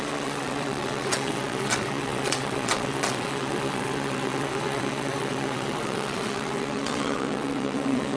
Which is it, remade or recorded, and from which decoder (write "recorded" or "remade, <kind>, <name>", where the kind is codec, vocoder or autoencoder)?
remade, vocoder, WaveNeXt